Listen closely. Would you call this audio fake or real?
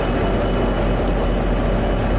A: real